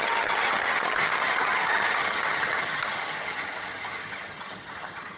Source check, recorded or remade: remade